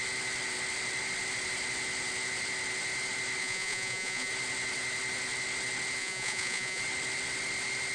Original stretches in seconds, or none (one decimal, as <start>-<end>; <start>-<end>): 0.0-3.4; 4.3-6.0; 6.8-7.9